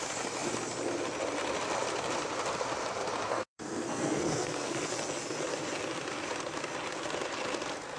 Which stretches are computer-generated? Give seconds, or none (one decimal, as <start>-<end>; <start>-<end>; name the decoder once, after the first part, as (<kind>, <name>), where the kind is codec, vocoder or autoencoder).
3.3-4.9 (codec, SNAC)